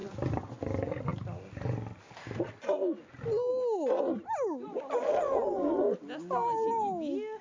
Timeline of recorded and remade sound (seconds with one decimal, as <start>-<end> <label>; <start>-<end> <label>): 0.0-0.6 remade; 0.6-5.1 recorded; 5.1-5.7 remade; 5.7-7.4 recorded